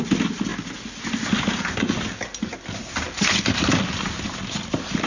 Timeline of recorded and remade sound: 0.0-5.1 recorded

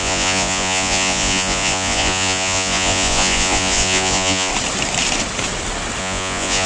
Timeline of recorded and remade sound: 0.0-4.5 remade; 4.5-6.0 recorded; 6.0-6.7 remade